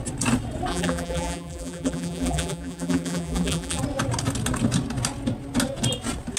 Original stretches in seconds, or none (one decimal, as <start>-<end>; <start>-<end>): 0.0-0.7; 3.8-6.4